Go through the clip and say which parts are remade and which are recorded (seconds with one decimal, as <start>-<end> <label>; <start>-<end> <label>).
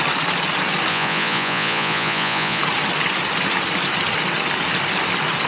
0.0-0.9 recorded; 0.9-2.6 remade; 2.6-5.5 recorded